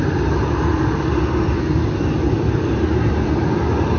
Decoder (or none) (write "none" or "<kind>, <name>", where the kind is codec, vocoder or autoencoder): none